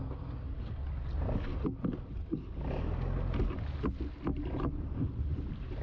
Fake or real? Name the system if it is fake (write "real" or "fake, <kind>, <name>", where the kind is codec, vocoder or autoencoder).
real